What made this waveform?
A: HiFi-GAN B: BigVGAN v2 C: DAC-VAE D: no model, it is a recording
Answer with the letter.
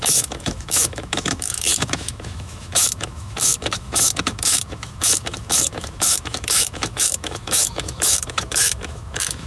C